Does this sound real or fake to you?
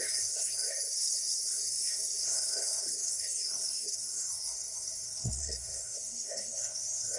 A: fake